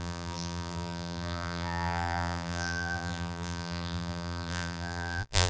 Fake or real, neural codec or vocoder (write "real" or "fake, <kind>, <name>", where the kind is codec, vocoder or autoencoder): fake, vocoder, BigVGAN v2